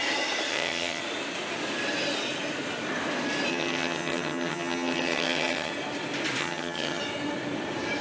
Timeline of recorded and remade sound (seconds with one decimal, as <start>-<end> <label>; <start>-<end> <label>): 0.0-0.5 recorded; 0.5-1.0 remade; 1.0-3.5 recorded; 3.5-5.7 remade; 5.7-6.4 recorded; 6.4-7.0 remade; 7.0-8.0 recorded